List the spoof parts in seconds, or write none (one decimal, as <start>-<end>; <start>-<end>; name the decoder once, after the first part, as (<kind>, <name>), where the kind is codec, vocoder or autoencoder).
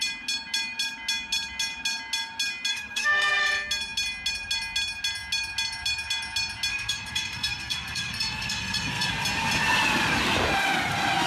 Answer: 2.7-3.4 (codec, SNAC); 6.7-9.1